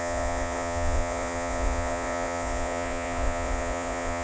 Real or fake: fake